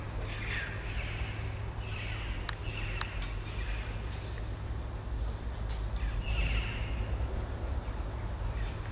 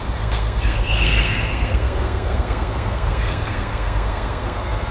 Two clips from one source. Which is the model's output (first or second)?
second